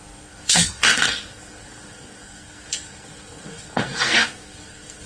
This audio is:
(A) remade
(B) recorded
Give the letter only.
A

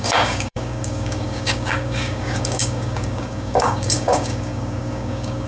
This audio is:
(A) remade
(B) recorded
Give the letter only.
A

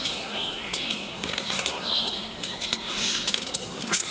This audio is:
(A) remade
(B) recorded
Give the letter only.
A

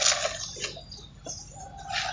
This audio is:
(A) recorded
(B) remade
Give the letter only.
A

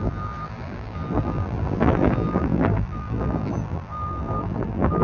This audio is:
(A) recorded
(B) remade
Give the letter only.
B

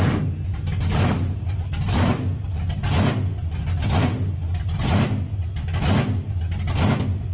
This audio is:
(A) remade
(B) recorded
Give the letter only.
B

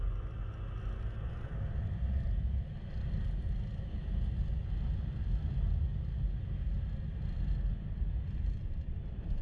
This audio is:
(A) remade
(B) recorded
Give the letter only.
B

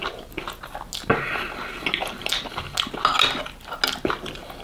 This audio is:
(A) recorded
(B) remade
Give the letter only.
A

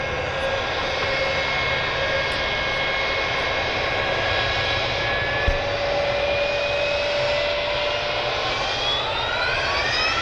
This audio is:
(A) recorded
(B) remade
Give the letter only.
A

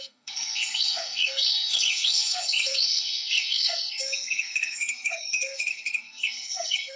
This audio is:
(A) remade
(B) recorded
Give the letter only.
A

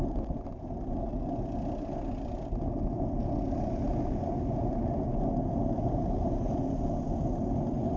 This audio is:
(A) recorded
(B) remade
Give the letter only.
A